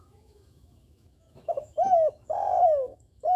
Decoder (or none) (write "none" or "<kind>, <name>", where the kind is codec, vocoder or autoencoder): autoencoder, DAC-VAE